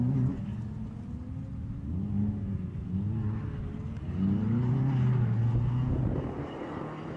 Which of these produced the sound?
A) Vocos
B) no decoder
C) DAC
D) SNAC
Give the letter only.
B